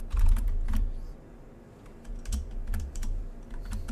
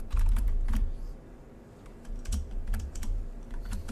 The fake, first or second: second